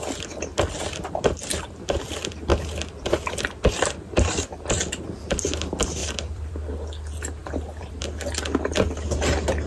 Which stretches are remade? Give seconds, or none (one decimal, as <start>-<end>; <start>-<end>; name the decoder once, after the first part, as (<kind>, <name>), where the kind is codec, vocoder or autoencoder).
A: 2.5-5.4 (vocoder, BigVGAN v2); 6.0-6.7; 7.4-8.0